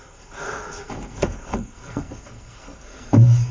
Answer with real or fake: fake